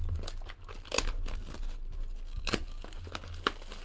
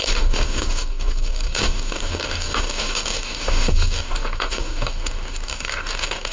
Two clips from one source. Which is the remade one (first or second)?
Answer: second